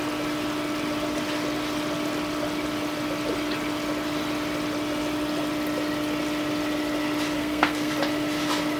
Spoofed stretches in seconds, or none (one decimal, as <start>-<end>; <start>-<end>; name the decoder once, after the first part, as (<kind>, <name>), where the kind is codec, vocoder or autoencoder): 7.4-7.9 (codec, SNAC)